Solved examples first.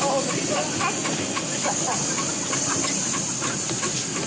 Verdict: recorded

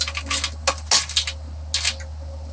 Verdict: recorded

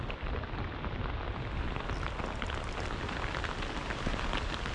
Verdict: recorded